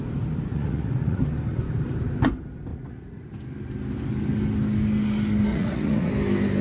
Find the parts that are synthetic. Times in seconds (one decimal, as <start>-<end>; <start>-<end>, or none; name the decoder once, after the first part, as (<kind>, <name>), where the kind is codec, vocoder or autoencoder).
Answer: 0.5-1.2 (vocoder, Vocos); 2.7-3.3; 5.5-6.1